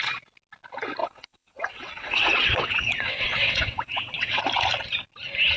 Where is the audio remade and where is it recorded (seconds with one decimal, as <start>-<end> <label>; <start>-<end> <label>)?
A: 0.0-1.0 recorded; 1.0-4.4 remade; 4.4-5.6 recorded